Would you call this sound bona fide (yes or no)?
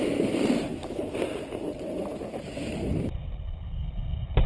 yes